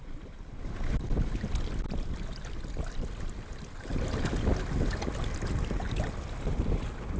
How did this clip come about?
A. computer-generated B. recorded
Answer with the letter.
B